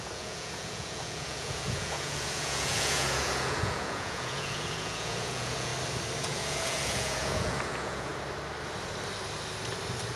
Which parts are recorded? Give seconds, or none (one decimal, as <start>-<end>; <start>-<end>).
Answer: 5.7-6.2; 8.1-10.2